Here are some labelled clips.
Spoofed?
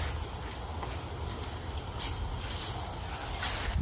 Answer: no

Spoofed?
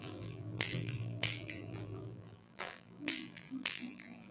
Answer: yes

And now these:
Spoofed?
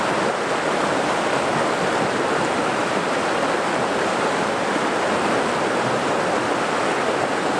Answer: no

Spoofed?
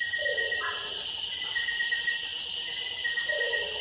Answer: no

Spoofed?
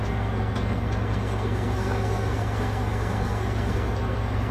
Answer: yes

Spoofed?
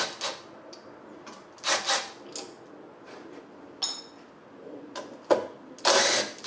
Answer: no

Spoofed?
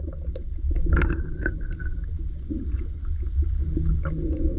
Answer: no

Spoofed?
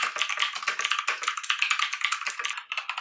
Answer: no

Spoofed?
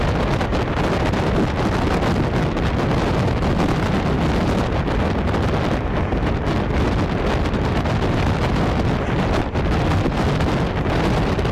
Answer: no